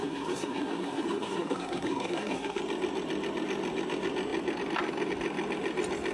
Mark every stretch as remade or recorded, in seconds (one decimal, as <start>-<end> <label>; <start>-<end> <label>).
0.0-2.6 remade; 2.6-6.1 recorded